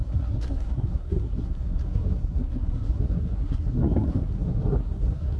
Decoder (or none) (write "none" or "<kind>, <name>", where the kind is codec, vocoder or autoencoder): codec, SNAC